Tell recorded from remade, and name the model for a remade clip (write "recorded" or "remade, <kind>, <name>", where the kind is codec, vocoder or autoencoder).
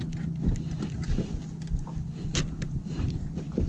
recorded